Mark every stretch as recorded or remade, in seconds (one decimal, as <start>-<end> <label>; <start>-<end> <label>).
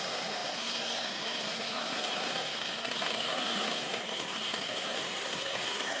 0.0-6.0 remade